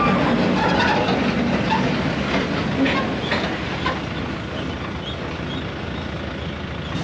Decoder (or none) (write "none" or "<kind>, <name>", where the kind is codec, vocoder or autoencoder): none